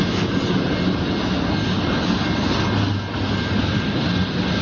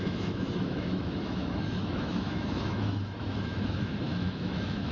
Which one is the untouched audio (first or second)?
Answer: first